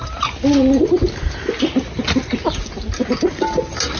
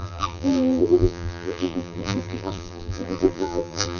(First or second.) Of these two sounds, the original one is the first